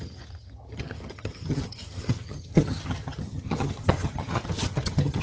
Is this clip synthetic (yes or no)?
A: yes